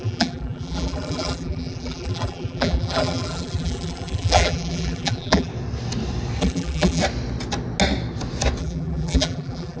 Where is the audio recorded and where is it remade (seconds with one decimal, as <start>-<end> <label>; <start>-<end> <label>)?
0.0-5.5 remade; 5.5-6.4 recorded; 6.4-7.0 remade; 7.0-8.6 recorded; 8.6-9.8 remade